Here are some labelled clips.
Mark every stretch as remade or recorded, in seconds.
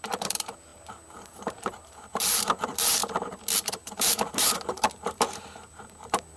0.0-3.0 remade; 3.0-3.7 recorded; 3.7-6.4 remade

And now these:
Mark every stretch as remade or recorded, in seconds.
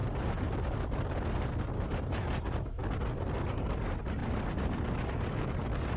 0.0-1.2 remade; 1.2-4.2 recorded; 4.2-4.8 remade; 4.8-6.0 recorded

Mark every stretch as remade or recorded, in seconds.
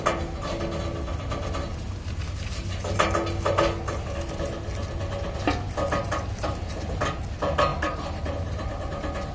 0.0-1.7 recorded; 1.7-3.1 remade; 3.1-7.7 recorded; 7.7-8.2 remade; 8.2-9.3 recorded